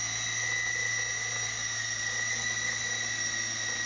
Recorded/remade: recorded